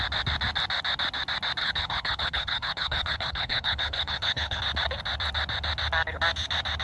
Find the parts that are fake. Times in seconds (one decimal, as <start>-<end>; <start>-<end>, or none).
1.6-4.6